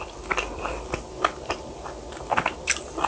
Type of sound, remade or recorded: recorded